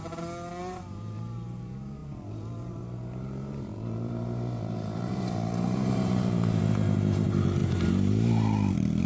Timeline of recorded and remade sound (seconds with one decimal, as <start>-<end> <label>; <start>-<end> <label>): 0.0-0.6 recorded; 0.6-9.1 remade